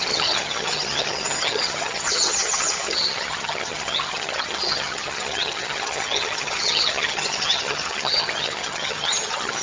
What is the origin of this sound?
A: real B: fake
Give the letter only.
B